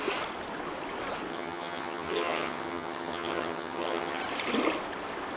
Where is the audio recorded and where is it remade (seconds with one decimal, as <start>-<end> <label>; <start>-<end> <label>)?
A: 0.0-1.3 recorded; 1.3-4.2 remade; 4.2-5.4 recorded